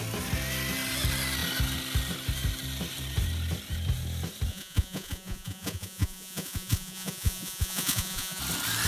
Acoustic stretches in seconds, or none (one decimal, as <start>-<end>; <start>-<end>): 0.0-4.5; 8.4-8.9